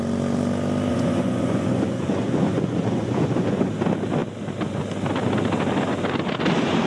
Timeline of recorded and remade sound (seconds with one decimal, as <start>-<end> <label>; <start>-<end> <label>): 0.0-0.9 recorded; 0.9-3.7 remade; 3.7-6.9 recorded